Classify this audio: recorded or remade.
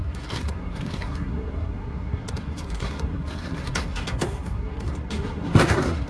remade